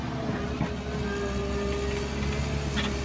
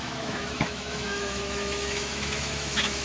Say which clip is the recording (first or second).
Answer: first